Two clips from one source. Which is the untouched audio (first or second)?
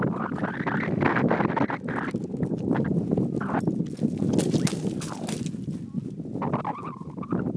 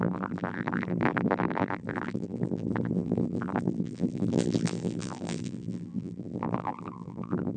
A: first